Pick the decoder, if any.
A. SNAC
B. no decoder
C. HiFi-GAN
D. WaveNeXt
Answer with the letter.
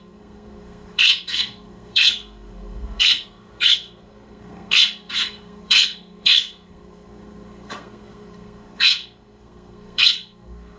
A